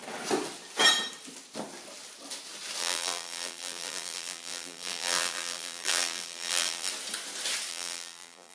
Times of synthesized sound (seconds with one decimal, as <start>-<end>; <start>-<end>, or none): 2.8-6.9; 7.7-8.5